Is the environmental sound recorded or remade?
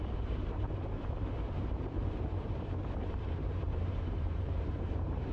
remade